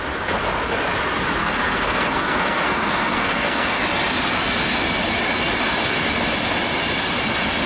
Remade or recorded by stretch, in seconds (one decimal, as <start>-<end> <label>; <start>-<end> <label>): 0.0-1.4 recorded; 1.4-3.8 remade; 3.8-7.7 recorded